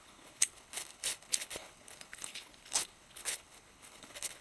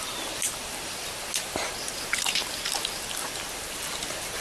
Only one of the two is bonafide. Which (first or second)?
second